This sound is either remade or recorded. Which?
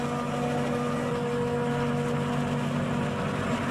recorded